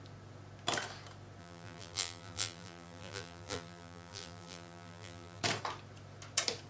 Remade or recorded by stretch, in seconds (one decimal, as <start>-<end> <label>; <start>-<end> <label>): 0.0-1.4 recorded; 1.4-5.4 remade; 5.4-6.7 recorded